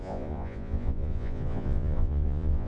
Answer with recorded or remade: remade